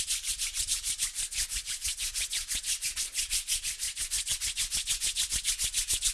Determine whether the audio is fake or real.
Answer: real